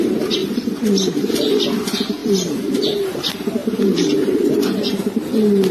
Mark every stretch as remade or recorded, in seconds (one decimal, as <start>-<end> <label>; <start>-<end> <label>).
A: 0.0-0.4 recorded; 0.4-1.7 remade; 1.7-2.2 recorded; 2.2-2.8 remade; 2.8-3.6 recorded; 3.6-5.2 remade; 5.2-5.7 recorded